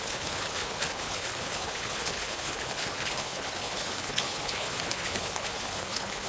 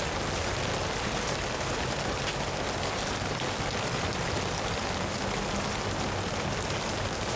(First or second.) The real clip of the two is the second